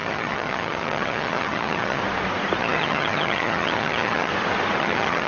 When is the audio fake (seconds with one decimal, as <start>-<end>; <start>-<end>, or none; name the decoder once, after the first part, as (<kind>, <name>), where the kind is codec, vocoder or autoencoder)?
0.0-2.0 (vocoder, HiFi-GAN); 2.6-4.3; 4.8-5.3